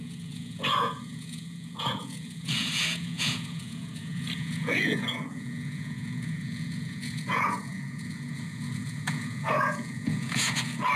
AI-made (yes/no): yes